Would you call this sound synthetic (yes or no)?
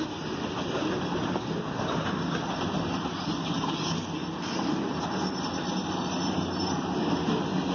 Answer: no